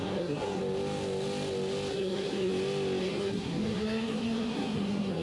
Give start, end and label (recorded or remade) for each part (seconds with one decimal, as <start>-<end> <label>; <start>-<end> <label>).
0.0-0.6 remade; 0.6-1.9 recorded; 1.9-2.5 remade; 2.5-3.0 recorded; 3.0-5.2 remade